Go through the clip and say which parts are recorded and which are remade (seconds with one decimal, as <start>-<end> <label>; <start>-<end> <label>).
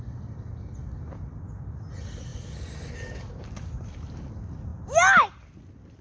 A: 0.0-6.0 recorded